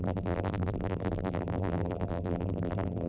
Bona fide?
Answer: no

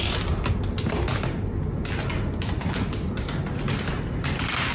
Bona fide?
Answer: yes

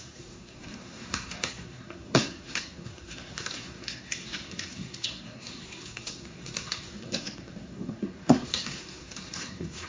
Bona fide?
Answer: no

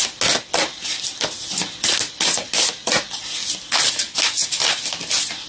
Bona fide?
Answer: yes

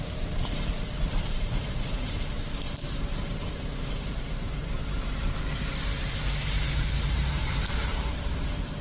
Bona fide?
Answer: no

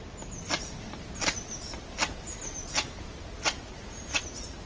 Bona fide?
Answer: yes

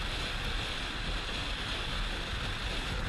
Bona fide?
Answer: yes